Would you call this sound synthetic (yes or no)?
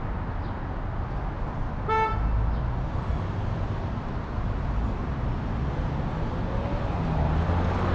no